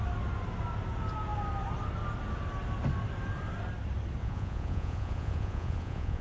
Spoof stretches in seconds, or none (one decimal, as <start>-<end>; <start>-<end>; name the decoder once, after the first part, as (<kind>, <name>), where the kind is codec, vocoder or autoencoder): 4.2-6.2 (vocoder, Vocos)